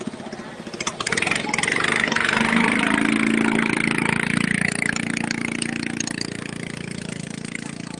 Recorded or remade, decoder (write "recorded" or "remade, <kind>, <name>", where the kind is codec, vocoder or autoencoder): recorded